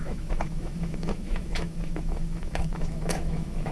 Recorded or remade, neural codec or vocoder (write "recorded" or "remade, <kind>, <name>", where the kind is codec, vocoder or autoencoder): remade, autoencoder, DAC-VAE